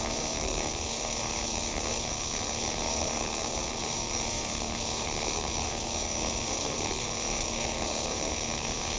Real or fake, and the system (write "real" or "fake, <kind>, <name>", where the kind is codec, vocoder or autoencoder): fake, codec, SNAC